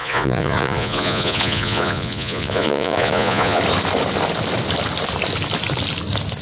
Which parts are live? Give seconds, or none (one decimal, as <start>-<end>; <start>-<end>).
3.6-6.4

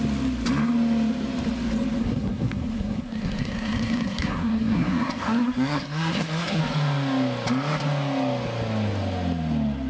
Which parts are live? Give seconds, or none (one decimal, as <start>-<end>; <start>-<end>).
0.0-2.0; 6.6-9.9

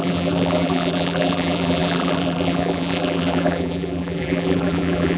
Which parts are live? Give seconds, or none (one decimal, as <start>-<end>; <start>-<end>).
none

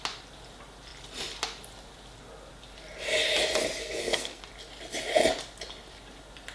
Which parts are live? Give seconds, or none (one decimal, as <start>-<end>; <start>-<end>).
0.0-3.8; 4.4-6.5

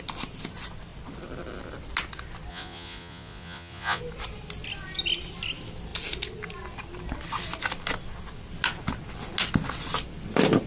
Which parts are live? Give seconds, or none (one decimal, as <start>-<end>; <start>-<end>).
0.0-2.5; 4.0-10.7